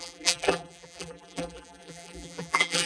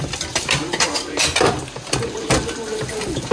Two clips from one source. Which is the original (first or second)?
second